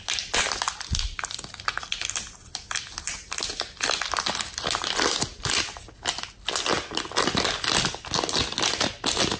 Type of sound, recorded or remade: recorded